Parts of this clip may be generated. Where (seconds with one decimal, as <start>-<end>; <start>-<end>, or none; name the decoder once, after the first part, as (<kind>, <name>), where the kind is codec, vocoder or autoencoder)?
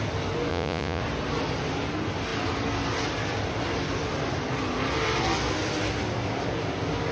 0.5-1.0 (vocoder, Vocos)